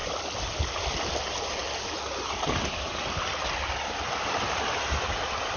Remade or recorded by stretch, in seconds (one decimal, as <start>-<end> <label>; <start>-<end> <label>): 0.0-5.6 recorded